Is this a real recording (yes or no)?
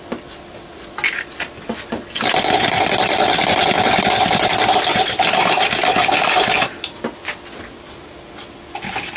yes